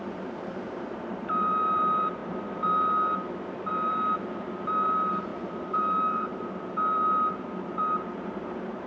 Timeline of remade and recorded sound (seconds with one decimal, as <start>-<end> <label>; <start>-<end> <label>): 0.0-2.2 remade; 2.2-3.7 recorded; 3.7-8.9 remade